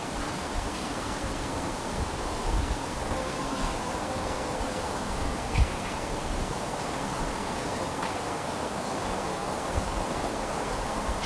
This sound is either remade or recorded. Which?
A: remade